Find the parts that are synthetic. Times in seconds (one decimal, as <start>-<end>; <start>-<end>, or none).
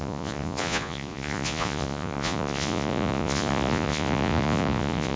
0.0-5.2